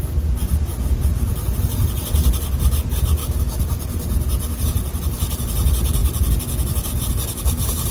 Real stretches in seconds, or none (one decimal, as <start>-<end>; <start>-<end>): 0.0-3.2; 3.8-7.9